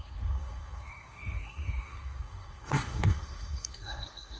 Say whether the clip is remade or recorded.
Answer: remade